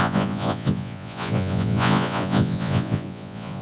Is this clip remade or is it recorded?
remade